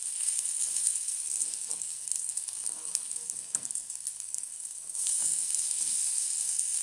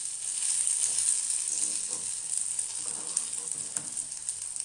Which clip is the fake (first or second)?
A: first